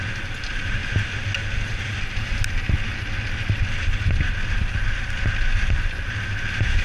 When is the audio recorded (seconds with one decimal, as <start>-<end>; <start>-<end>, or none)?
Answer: 0.0-6.8